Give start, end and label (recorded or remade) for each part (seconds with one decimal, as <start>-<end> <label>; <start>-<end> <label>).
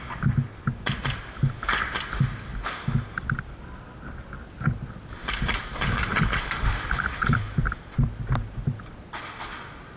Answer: 0.0-5.2 recorded; 5.2-8.2 remade; 8.2-10.0 recorded